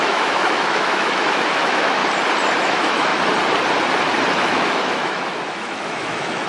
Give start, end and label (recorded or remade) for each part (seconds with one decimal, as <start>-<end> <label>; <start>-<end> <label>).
0.0-2.0 remade; 2.0-2.6 recorded; 2.6-3.1 remade; 3.1-4.4 recorded; 4.4-6.5 remade